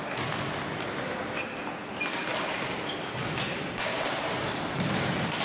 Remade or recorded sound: recorded